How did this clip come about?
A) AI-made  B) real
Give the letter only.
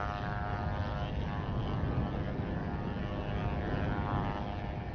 B